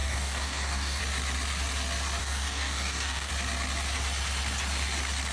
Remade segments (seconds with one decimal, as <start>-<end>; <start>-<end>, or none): 0.0-1.0; 2.2-3.3